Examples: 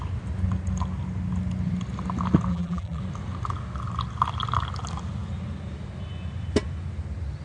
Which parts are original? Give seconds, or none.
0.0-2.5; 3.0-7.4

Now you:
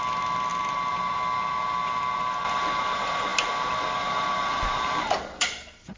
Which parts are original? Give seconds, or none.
0.0-4.5

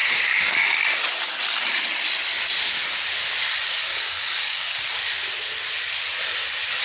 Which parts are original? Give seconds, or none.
0.0-3.5; 5.0-6.8

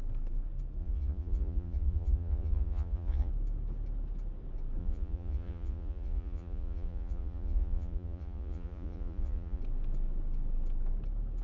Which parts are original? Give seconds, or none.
0.0-0.8; 3.3-4.8; 9.6-11.4

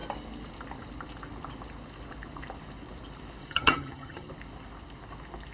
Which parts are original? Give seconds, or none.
0.0-3.4; 4.3-5.5

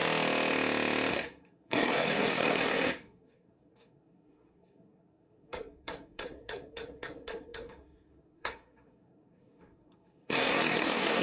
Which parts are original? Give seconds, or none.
0.0-1.1

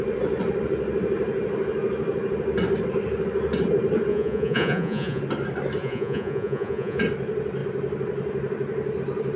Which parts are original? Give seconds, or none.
0.0-4.1; 5.2-5.8; 7.0-9.4

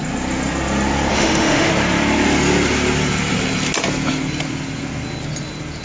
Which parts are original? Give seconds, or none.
0.0-1.1; 1.7-5.8